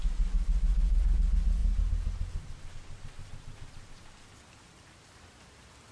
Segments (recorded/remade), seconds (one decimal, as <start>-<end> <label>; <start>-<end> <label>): 0.0-5.9 recorded